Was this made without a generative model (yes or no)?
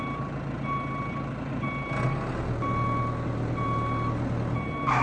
yes